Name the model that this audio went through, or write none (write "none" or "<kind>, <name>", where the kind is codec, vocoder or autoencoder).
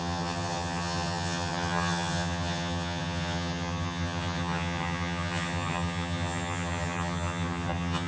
vocoder, HiFi-GAN